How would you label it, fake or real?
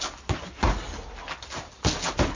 real